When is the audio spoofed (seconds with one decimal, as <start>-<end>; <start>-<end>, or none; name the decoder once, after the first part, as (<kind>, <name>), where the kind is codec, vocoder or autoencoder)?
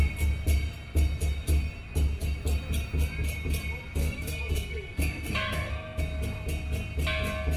4.0-6.0 (codec, SNAC)